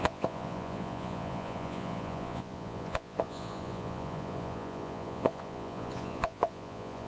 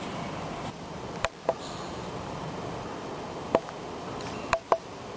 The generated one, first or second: first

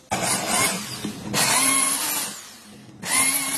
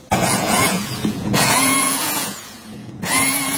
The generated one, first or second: second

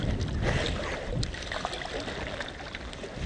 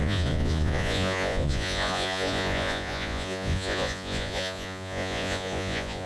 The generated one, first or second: second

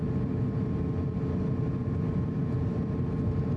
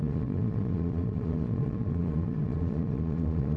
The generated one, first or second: second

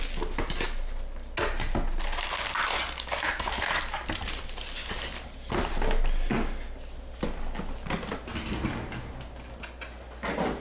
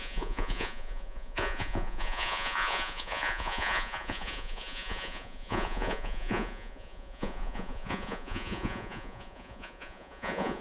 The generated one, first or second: second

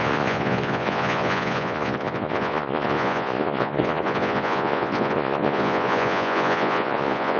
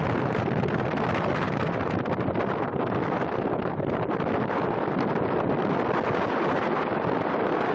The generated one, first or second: first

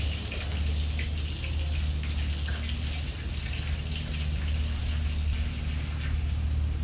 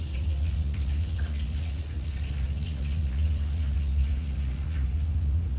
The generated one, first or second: second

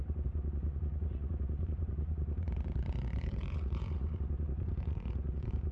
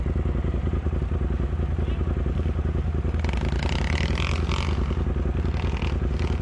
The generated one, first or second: first